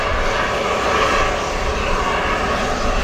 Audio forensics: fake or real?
real